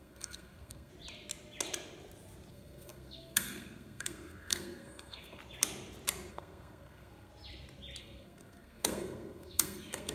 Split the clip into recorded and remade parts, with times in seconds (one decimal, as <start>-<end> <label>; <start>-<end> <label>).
0.0-0.9 remade; 0.9-2.5 recorded; 2.5-5.4 remade; 5.4-6.3 recorded; 6.3-7.3 remade; 7.3-8.0 recorded; 8.0-10.1 remade